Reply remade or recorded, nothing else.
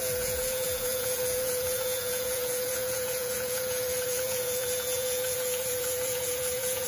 remade